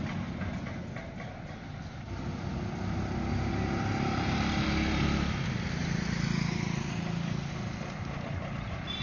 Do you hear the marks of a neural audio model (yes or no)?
no